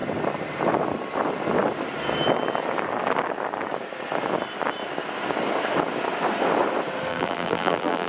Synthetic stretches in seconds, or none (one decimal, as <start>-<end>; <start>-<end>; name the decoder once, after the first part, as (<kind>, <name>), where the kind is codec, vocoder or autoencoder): 7.1-8.1 (vocoder, BigVGAN v2)